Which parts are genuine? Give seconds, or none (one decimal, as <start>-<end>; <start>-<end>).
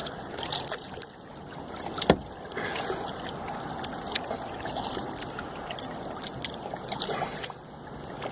0.0-8.3